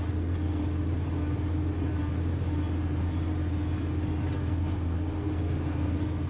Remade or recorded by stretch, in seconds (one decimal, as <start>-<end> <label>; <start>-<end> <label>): 0.0-0.6 remade; 0.6-4.4 recorded; 4.4-6.3 remade